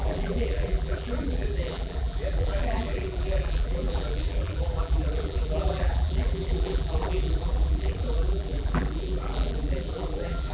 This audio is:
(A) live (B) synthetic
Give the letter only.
B